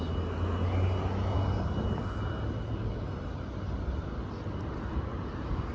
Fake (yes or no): no